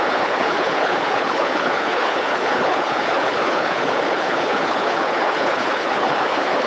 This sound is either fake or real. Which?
fake